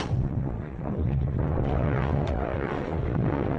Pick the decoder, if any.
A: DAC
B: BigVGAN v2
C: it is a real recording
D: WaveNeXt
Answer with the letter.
D